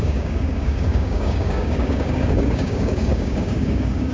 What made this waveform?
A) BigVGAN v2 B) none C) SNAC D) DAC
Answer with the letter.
D